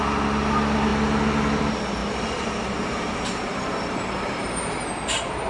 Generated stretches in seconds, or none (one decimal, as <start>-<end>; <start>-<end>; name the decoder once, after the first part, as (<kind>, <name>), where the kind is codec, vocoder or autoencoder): 2.0-5.5 (vocoder, BigVGAN v2)